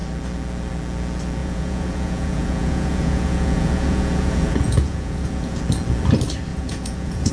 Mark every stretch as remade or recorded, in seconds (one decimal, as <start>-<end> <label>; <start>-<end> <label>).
0.0-1.4 recorded; 1.4-5.6 remade; 5.6-6.5 recorded; 6.5-7.3 remade